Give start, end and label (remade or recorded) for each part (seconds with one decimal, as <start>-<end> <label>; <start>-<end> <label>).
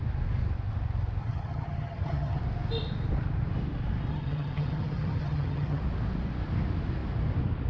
0.0-1.2 recorded; 1.2-2.4 remade; 2.4-4.1 recorded; 4.1-5.8 remade; 5.8-7.7 recorded